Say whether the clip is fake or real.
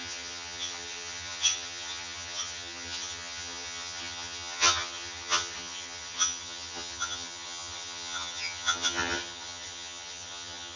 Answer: fake